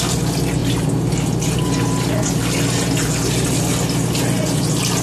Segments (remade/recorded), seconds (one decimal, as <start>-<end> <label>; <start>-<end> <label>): 0.0-5.0 recorded